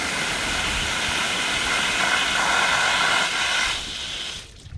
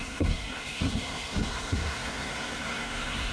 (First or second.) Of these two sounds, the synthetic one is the second